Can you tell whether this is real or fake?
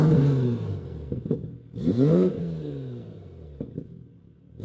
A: fake